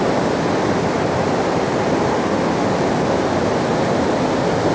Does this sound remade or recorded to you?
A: recorded